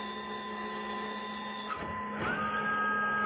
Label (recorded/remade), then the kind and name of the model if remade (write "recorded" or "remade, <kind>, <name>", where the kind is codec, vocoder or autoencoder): recorded